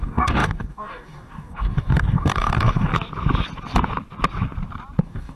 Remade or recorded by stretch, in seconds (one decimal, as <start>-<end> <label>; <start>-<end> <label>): 0.0-2.9 remade; 2.9-5.0 recorded; 5.0-5.4 remade